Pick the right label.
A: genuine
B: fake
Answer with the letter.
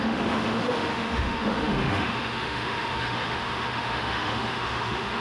B